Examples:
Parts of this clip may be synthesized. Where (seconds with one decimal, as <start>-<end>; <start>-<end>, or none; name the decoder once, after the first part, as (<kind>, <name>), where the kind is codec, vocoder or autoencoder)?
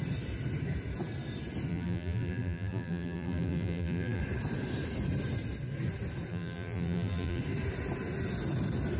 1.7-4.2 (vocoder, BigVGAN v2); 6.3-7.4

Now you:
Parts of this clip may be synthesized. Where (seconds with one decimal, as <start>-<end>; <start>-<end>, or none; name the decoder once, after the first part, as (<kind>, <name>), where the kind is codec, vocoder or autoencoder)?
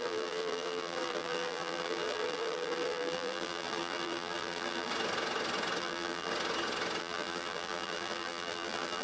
0.0-4.9 (vocoder, BigVGAN v2); 5.8-6.3; 7.0-9.0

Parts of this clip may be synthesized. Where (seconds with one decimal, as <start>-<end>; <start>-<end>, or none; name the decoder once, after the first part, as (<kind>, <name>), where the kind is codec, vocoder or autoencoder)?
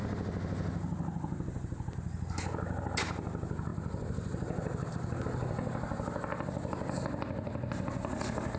3.7-4.9 (vocoder, BigVGAN v2)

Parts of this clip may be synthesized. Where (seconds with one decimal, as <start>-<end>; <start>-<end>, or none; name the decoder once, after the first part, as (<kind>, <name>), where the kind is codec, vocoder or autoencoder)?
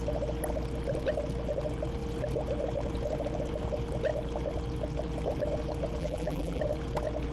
6.0-6.6 (vocoder, BigVGAN v2)